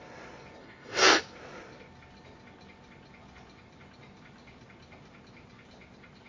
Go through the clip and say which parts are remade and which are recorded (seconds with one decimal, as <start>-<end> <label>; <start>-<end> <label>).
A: 0.0-0.6 recorded; 0.6-1.2 remade; 1.2-6.3 recorded